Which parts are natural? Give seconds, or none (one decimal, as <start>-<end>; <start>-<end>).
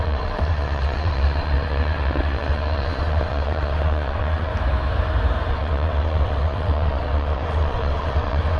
4.5-5.5